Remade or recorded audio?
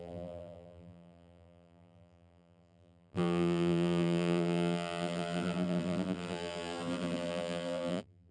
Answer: remade